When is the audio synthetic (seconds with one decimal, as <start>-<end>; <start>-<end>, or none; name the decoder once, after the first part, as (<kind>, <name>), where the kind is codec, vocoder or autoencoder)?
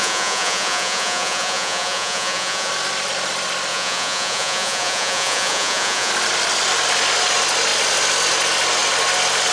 0.0-2.7 (vocoder, Vocos); 3.7-6.1